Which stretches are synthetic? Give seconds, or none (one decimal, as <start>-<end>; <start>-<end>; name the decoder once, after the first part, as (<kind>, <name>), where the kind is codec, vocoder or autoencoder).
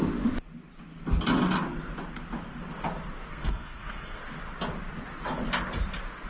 3.3-4.2 (codec, SNAC)